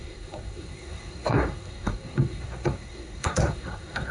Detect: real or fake fake